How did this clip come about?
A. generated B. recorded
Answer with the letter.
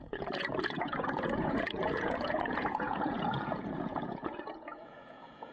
A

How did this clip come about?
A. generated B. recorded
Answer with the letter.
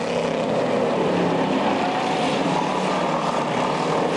B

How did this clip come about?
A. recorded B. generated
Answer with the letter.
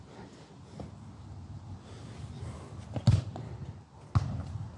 A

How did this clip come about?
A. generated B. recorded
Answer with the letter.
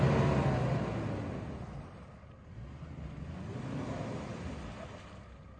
B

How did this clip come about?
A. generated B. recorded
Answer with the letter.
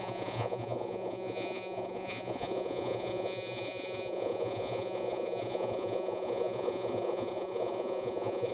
A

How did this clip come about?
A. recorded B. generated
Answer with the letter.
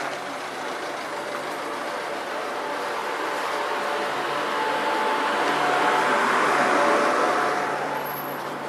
A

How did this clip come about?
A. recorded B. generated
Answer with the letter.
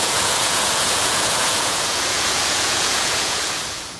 B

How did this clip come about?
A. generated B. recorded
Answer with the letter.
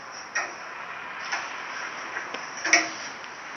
B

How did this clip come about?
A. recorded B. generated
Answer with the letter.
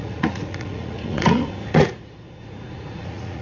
B